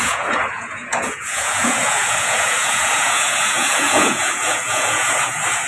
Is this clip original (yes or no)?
no